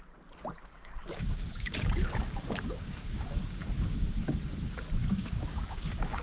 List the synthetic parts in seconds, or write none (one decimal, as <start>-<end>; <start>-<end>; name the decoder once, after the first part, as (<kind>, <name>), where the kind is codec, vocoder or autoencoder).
0.7-4.4 (codec, DAC); 5.0-6.2